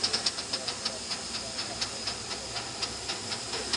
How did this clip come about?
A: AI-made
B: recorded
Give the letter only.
B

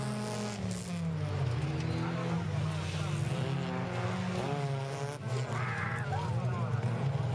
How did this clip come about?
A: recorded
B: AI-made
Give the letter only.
A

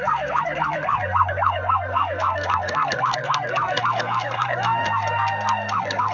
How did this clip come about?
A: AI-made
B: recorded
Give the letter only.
A